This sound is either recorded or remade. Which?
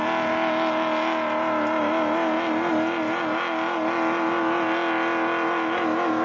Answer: recorded